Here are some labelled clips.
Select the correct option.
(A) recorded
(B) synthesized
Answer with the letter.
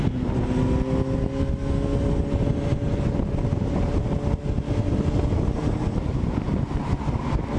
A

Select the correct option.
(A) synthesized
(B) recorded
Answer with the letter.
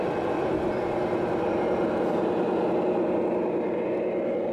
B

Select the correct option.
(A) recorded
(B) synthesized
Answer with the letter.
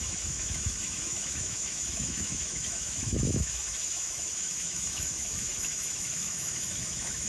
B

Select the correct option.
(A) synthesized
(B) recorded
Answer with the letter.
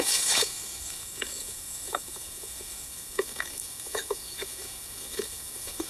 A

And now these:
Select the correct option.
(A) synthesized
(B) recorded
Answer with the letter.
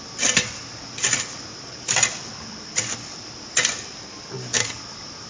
B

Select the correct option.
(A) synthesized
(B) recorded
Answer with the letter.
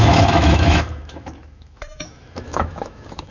A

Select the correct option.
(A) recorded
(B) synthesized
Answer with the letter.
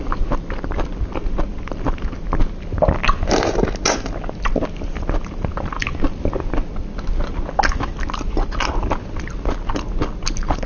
A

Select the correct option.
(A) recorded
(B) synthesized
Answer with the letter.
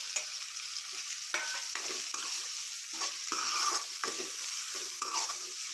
A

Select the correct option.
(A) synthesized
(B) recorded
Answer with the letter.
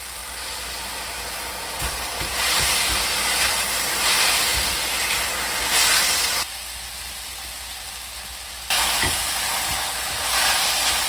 B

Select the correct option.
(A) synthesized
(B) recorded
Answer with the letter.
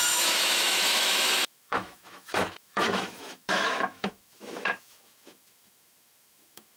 A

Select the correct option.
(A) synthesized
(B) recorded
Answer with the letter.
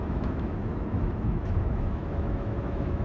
A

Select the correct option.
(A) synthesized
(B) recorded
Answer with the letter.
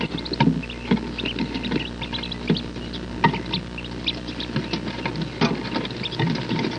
B